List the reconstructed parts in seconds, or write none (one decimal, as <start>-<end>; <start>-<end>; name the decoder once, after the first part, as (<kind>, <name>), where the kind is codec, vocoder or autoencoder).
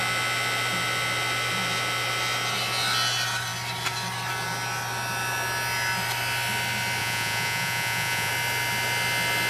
7.0-8.3 (vocoder, Vocos)